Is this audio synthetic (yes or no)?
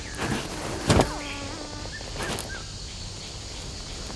no